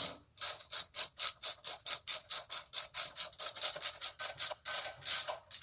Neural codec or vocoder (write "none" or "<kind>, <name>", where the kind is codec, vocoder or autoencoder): none